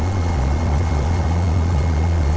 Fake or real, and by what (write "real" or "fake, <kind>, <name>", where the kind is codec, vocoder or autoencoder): fake, vocoder, Vocos